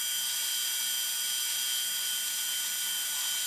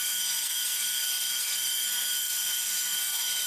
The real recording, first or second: first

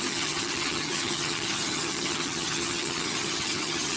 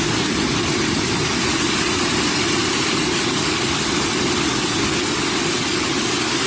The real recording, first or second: second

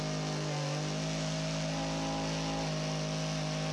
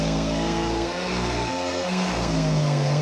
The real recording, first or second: first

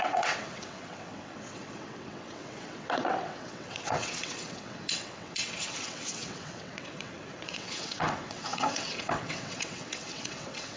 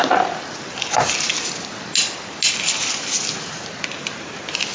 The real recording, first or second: second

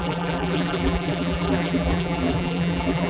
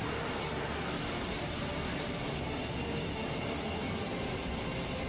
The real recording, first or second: second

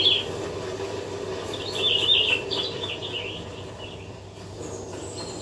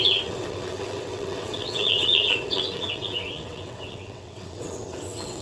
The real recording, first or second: first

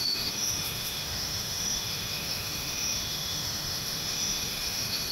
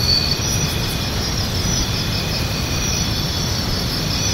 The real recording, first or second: second